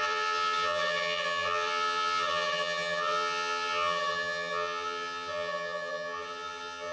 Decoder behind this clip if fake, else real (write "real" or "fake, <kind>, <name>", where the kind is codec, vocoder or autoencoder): fake, vocoder, HiFi-GAN